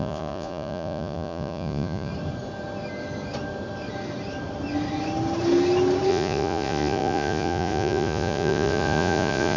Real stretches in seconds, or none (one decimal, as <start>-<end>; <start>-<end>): 2.1-6.1